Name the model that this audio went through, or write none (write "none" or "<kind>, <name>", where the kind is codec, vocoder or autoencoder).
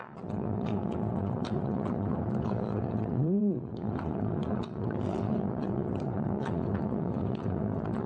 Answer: vocoder, WaveNeXt